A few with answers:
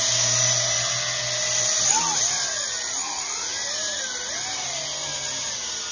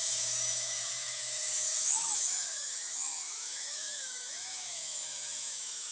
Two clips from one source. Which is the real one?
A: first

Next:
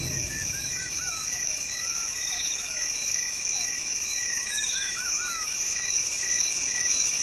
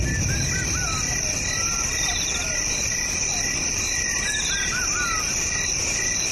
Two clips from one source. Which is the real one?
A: second